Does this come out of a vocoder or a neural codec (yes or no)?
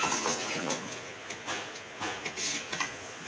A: yes